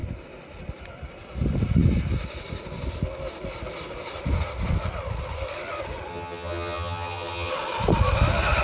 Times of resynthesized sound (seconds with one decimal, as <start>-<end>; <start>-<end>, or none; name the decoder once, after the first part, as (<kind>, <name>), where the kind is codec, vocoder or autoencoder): 6.1-7.5 (vocoder, HiFi-GAN)